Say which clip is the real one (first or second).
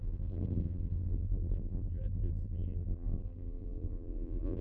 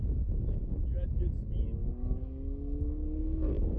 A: second